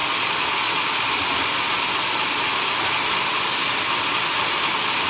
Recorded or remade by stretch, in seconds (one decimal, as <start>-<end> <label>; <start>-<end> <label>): 0.0-5.1 recorded